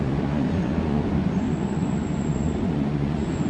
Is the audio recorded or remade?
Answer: remade